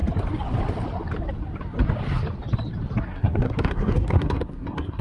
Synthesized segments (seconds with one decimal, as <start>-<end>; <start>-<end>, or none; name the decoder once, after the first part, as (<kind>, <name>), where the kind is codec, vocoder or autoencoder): 3.0-5.0 (codec, SNAC)